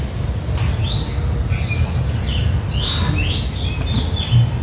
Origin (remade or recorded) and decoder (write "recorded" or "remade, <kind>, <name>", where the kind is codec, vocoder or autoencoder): recorded